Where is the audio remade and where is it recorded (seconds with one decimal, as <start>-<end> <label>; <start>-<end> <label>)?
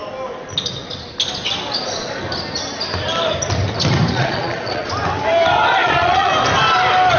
0.0-4.1 recorded; 4.1-4.9 remade; 4.9-5.8 recorded; 5.8-6.3 remade; 6.3-7.2 recorded